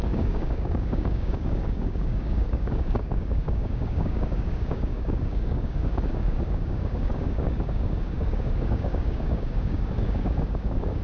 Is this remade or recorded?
remade